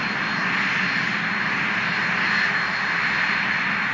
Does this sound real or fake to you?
real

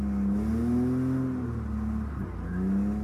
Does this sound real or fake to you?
real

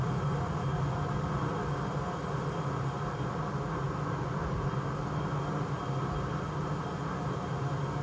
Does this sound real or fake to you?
real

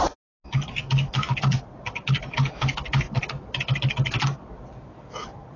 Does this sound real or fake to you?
real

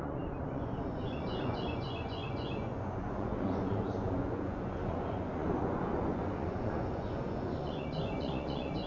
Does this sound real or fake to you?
fake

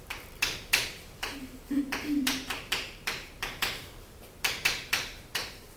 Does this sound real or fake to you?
fake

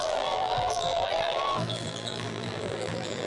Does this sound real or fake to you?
fake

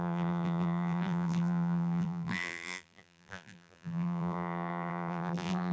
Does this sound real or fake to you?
fake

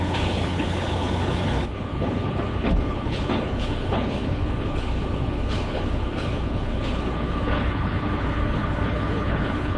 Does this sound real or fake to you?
fake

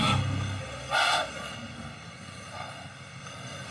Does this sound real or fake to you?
fake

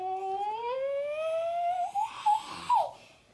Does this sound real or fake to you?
real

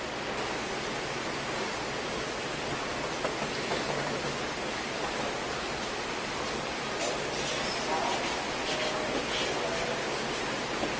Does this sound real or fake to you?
real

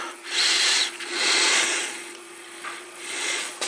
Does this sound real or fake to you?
fake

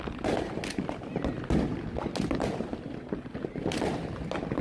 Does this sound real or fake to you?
real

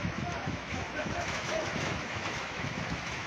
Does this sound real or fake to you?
fake